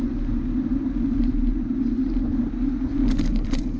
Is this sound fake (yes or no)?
no